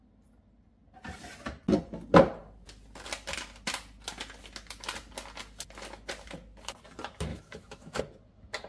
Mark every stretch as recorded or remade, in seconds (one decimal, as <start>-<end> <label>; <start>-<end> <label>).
0.0-7.3 recorded; 7.3-8.0 remade; 8.0-8.7 recorded